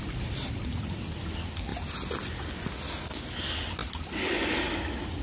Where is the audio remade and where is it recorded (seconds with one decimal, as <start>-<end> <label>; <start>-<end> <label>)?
0.0-5.2 recorded